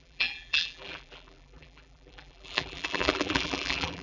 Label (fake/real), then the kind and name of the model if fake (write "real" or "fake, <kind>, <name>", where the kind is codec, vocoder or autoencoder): fake, vocoder, BigVGAN v2